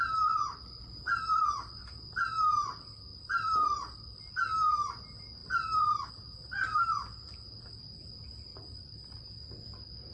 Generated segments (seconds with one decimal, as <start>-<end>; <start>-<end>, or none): 3.1-4.3; 5.4-6.1; 8.5-9.3

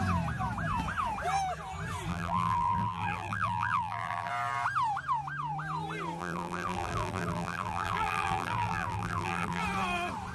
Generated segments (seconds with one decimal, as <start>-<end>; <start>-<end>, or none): 2.1-4.3; 6.2-9.6

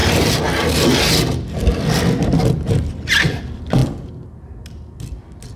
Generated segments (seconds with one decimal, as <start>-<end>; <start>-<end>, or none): none

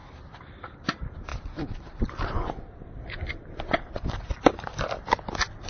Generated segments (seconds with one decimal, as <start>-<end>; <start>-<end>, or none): 0.0-5.7

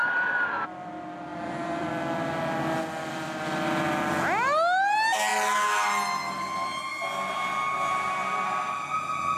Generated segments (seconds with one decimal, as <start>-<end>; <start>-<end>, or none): 0.0-0.9; 1.3-1.9

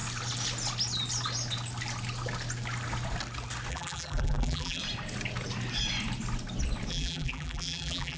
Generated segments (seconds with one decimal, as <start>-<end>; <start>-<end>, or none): 3.7-4.8; 6.9-8.2

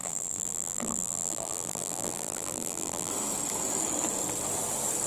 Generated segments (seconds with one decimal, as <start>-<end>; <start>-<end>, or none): 0.0-3.1